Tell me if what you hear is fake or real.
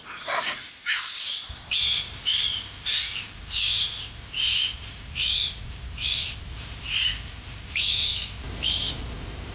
fake